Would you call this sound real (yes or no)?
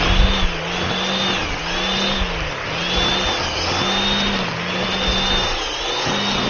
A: yes